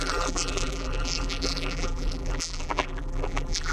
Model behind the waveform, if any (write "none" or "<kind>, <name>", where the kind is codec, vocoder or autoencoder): vocoder, BigVGAN v2